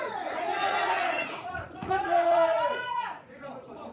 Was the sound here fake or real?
fake